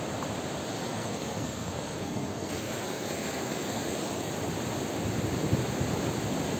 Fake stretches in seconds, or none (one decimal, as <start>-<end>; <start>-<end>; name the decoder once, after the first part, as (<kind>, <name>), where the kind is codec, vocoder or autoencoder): 0.8-4.3 (codec, SNAC)